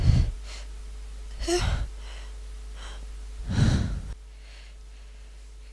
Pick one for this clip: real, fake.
real